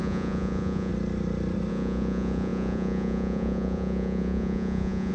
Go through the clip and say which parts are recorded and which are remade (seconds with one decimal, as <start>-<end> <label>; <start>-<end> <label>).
0.0-0.9 remade; 0.9-1.7 recorded; 1.7-5.1 remade